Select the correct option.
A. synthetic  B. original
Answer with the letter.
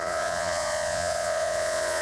A